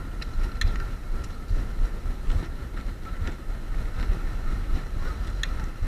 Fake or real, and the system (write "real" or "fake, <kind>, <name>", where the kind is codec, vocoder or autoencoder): real